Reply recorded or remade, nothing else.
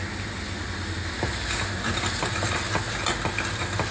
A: recorded